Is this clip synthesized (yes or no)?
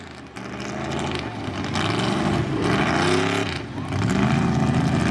no